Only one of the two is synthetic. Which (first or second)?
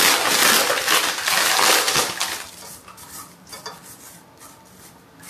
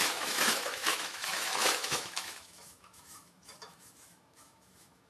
second